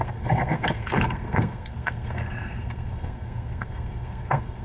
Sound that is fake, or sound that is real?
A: fake